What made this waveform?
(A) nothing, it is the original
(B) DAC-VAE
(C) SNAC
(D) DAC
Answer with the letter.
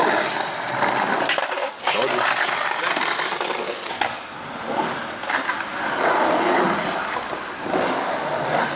A